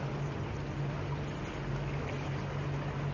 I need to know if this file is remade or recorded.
recorded